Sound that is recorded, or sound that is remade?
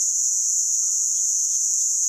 remade